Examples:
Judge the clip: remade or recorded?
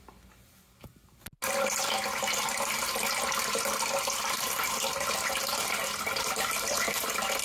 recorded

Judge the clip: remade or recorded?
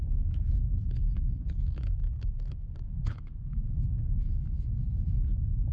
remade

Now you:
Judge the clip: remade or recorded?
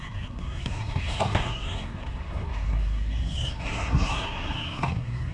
remade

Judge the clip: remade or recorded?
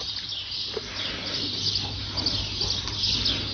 recorded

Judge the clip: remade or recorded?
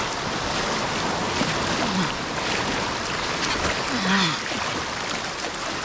recorded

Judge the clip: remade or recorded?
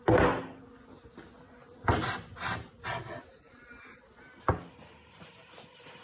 recorded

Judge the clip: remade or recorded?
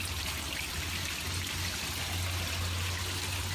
recorded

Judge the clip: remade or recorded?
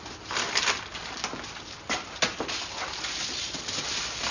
recorded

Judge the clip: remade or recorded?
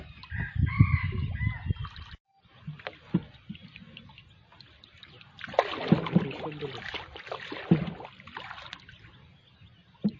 recorded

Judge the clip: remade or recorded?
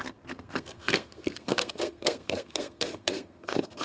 remade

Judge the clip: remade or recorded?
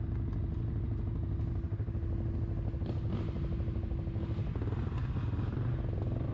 recorded